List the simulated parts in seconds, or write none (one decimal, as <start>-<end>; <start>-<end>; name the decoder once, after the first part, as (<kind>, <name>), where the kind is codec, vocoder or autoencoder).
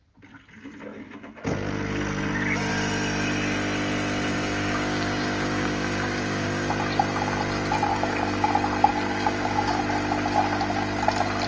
4.3-6.7 (codec, DAC); 7.9-8.5; 8.9-9.8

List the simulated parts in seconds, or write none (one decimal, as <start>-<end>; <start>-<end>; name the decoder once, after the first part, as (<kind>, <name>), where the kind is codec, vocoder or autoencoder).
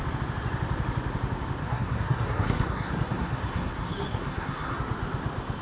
1.6-4.8 (codec, SNAC)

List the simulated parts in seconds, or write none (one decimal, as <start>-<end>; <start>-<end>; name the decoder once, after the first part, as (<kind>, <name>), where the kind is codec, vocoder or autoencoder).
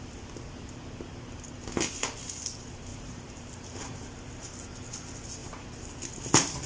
2.9-4.0 (vocoder, BigVGAN v2); 5.4-5.9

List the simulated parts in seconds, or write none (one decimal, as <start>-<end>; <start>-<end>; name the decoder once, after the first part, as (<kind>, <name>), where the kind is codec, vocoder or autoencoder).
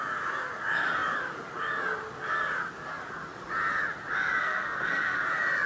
4.4-5.2 (codec, SNAC)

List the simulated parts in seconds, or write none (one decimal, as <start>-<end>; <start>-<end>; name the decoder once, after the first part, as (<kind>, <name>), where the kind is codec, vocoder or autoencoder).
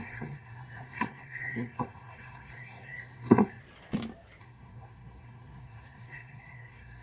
0.0-3.6 (codec, SNAC); 4.4-7.0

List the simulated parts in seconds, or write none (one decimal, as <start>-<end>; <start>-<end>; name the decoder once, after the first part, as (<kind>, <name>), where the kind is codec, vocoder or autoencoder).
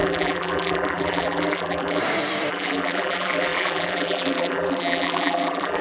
0.0-2.0 (vocoder, BigVGAN v2); 2.5-5.8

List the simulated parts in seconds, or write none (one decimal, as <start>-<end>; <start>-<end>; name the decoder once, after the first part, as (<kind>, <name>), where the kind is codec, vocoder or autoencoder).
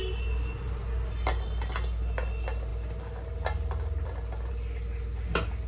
none